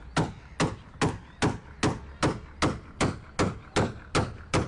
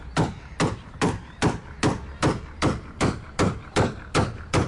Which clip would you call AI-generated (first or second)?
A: second